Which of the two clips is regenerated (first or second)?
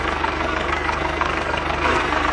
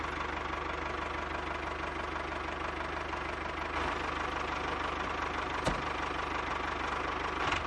first